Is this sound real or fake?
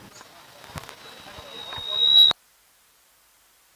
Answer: real